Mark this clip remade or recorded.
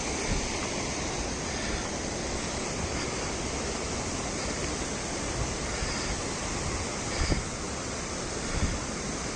remade